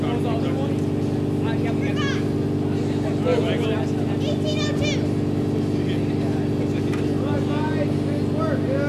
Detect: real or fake real